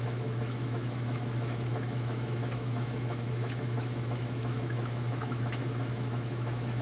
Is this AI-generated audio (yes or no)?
yes